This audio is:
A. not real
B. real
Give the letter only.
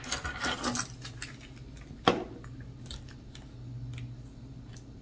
B